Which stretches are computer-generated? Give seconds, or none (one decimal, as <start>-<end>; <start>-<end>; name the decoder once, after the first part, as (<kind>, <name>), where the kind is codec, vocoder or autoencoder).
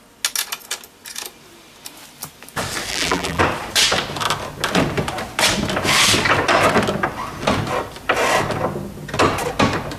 2.9-3.4 (vocoder, BigVGAN v2)